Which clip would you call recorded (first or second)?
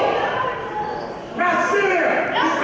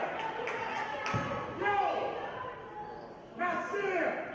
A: second